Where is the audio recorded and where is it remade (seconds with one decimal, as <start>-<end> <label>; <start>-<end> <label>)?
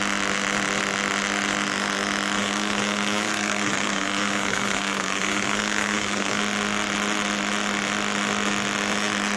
0.0-2.4 recorded; 2.4-6.4 remade; 6.4-9.4 recorded